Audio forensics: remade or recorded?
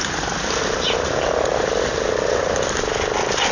recorded